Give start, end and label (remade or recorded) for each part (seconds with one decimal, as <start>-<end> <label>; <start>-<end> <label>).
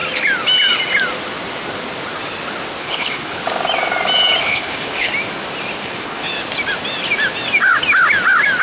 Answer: 0.0-2.8 recorded; 2.8-3.4 remade; 3.4-4.4 recorded; 4.4-5.1 remade; 5.1-5.8 recorded; 5.8-6.3 remade; 6.3-8.6 recorded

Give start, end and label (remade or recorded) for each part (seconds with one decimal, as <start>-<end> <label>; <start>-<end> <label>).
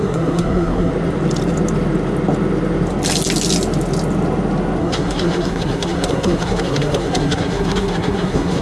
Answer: 0.0-0.9 remade; 0.9-4.8 recorded; 4.8-8.6 remade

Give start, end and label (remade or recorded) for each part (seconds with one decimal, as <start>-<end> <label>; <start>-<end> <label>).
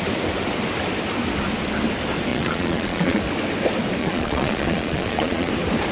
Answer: 0.0-2.3 recorded; 2.3-3.2 remade; 3.2-4.0 recorded; 4.0-5.5 remade; 5.5-5.9 recorded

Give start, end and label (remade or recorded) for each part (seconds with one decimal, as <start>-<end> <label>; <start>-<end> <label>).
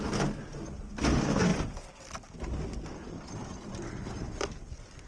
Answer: 0.0-5.1 recorded